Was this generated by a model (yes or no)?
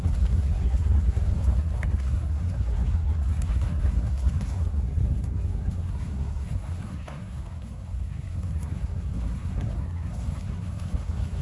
yes